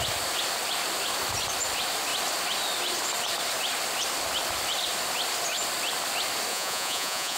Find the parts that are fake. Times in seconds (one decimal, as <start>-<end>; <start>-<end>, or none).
6.5-7.4